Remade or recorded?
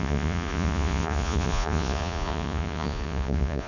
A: remade